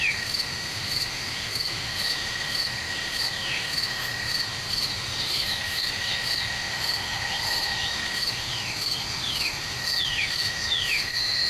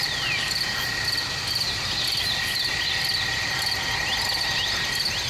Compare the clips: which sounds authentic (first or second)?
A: second